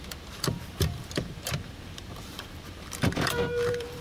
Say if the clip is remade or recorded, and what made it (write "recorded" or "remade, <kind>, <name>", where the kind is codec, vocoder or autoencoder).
remade, vocoder, BigVGAN v2